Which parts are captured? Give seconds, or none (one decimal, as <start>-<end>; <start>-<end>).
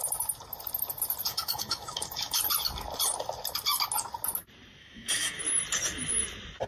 0.0-1.3; 2.4-4.8; 5.4-6.7